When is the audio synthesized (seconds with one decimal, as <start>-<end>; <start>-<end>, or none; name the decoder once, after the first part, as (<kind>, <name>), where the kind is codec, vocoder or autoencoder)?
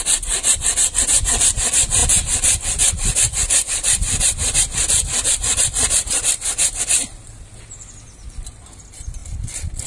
2.0-6.8 (vocoder, BigVGAN v2)